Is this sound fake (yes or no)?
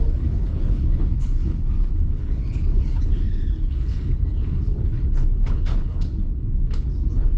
yes